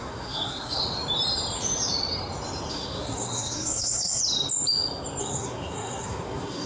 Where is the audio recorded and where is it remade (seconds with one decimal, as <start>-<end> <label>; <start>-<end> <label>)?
0.0-0.8 remade; 0.8-2.7 recorded; 2.7-4.2 remade; 4.2-5.2 recorded; 5.2-6.7 remade